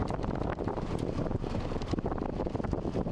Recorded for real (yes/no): yes